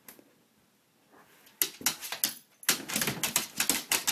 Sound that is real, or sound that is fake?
real